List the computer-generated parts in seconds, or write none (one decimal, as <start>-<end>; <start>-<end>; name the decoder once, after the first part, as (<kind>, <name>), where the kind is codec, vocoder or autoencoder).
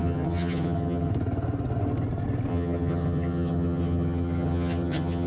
0.0-1.1 (vocoder, HiFi-GAN); 2.5-5.3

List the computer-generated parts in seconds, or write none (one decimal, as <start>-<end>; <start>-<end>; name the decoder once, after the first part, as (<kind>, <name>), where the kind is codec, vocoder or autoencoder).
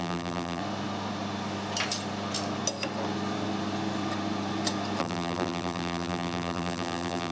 0.0-0.6 (vocoder, BigVGAN v2); 5.0-7.3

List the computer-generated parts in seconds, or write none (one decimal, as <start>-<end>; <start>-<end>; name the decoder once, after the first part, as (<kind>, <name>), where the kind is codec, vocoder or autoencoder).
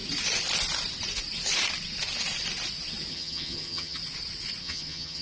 3.1-4.0 (vocoder, HiFi-GAN); 4.6-5.2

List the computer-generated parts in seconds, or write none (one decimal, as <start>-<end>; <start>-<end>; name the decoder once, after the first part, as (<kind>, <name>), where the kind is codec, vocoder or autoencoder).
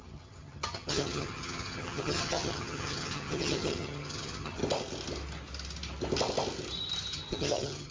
0.0-4.6 (vocoder, HiFi-GAN); 7.1-7.9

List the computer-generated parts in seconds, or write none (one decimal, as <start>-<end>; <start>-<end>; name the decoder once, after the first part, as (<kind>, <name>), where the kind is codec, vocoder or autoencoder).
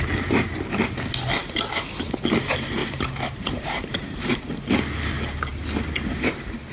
2.8-4.4 (vocoder, BigVGAN v2)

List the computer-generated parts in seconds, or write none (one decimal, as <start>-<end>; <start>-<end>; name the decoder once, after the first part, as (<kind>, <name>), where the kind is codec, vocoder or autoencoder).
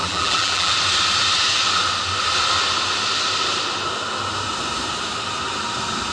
0.0-0.7 (vocoder, BigVGAN v2)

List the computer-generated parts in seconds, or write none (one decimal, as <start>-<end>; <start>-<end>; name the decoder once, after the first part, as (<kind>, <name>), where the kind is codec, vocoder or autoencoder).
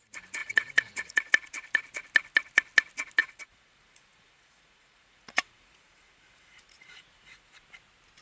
0.4-1.3 (vocoder, Vocos); 3.2-7.5